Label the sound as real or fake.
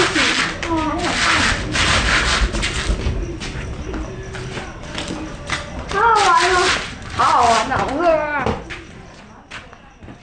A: real